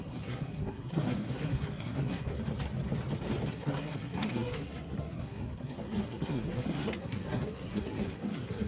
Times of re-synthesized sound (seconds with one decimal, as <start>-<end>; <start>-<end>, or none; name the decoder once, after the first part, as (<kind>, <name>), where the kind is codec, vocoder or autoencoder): 0.0-2.3 (codec, SNAC); 3.5-8.7